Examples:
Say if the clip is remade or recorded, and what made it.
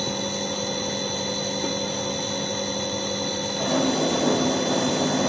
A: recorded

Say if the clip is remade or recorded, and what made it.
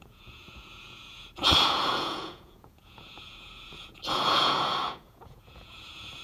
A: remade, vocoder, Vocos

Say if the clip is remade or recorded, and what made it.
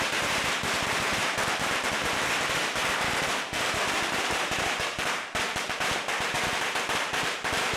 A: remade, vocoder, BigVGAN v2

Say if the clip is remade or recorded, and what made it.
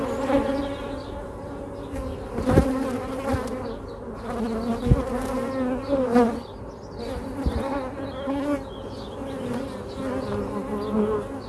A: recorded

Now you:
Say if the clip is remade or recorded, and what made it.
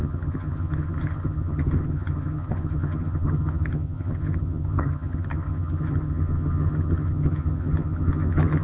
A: remade, vocoder, HiFi-GAN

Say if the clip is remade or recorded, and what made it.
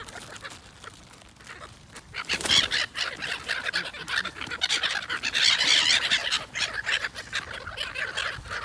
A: recorded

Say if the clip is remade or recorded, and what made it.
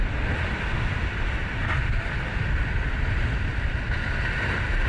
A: recorded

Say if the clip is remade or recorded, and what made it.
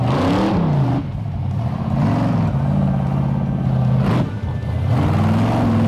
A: recorded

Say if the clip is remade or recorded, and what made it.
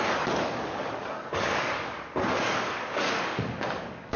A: remade, codec, DAC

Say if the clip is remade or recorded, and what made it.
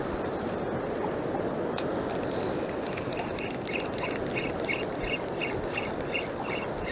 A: recorded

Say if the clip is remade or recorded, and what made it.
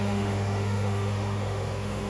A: remade, autoencoder, DAC-VAE